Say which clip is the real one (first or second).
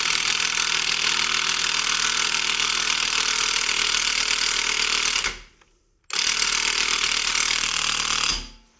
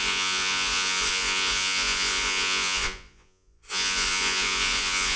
first